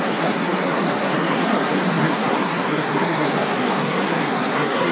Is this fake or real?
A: fake